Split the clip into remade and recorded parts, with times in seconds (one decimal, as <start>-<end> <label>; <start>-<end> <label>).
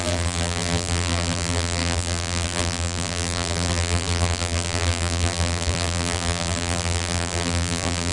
0.0-8.1 remade